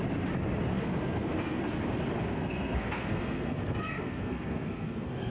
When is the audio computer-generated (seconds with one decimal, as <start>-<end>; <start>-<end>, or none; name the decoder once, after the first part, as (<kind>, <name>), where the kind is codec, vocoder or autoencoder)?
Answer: 0.7-1.6 (codec, SNAC); 2.2-5.3